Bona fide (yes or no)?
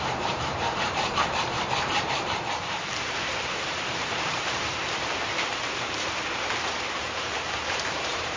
no